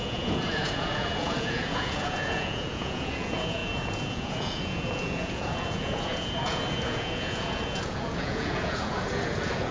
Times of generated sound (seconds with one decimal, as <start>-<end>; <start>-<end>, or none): 0.0-9.7